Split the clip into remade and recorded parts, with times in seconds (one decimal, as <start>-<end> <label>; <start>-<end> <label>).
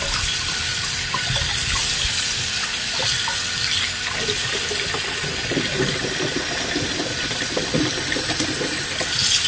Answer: 0.0-9.5 recorded